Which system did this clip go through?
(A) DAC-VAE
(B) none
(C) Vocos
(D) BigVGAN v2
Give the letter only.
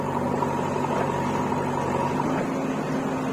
B